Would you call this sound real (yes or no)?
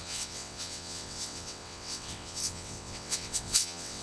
no